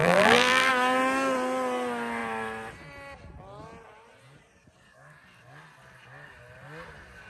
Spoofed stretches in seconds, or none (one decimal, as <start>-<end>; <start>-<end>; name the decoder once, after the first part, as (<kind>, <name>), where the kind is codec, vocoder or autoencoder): 0.0-0.7 (vocoder, BigVGAN v2)